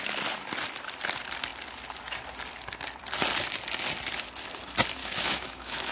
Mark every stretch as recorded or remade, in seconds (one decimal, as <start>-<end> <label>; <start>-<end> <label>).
0.0-5.0 recorded; 5.0-5.9 remade